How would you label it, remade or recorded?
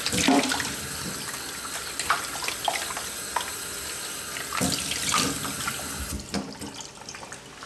recorded